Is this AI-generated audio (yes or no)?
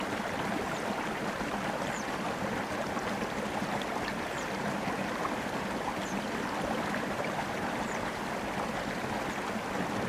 no